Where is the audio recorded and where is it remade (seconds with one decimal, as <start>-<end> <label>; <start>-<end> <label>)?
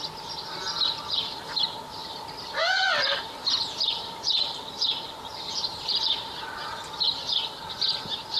0.0-2.0 recorded; 2.0-6.6 remade; 6.6-8.4 recorded